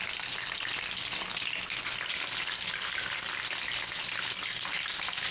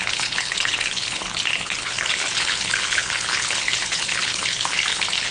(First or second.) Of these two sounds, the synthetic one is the second